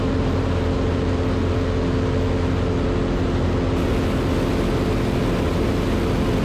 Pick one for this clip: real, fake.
real